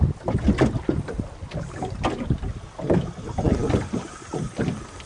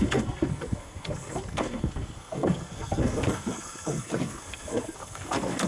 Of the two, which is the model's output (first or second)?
second